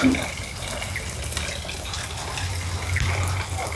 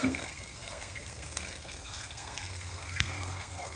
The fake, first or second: second